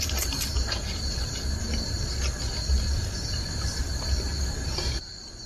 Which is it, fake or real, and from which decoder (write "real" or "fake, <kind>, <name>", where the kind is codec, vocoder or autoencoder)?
fake, vocoder, BigVGAN v2